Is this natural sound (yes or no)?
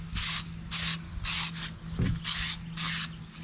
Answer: yes